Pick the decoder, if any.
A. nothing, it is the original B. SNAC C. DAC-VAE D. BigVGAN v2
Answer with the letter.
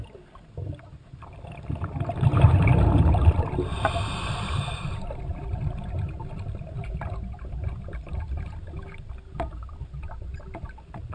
A